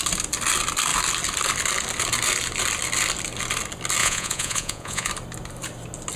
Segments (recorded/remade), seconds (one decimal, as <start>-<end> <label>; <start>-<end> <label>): 0.0-4.0 recorded; 4.0-5.1 remade; 5.1-6.2 recorded